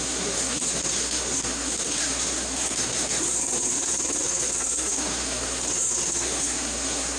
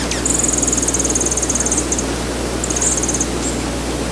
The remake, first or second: first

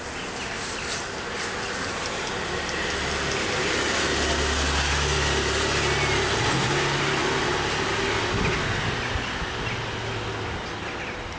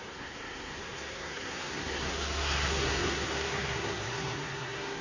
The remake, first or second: second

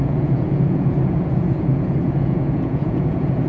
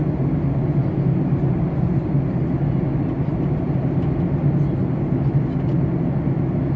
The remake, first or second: first